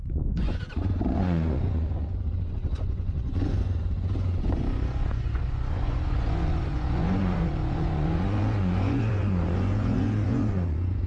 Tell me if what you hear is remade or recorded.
remade